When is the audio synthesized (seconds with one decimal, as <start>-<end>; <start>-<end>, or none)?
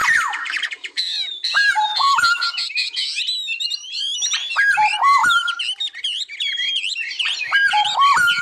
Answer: 0.0-1.0